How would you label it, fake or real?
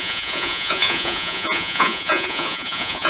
fake